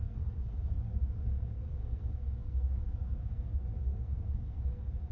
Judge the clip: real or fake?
fake